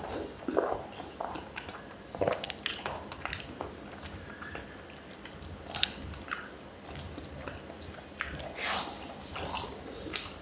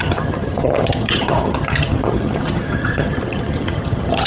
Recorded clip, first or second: first